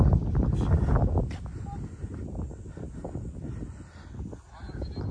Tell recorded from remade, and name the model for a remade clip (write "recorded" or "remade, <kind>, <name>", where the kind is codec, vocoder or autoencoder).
recorded